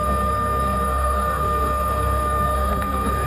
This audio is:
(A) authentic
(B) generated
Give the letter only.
B